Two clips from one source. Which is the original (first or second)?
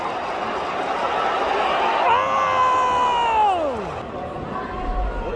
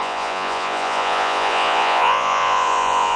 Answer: first